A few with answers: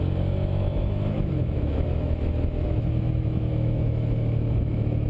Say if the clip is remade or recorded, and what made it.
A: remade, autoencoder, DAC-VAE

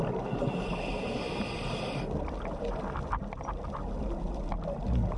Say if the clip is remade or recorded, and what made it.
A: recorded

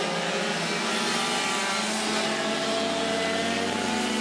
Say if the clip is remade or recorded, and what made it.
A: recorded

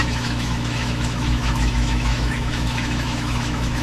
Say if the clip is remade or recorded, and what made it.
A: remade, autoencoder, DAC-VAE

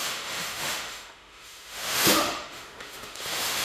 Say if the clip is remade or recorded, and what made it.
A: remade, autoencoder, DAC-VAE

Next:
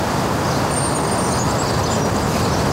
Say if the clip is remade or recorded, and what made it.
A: recorded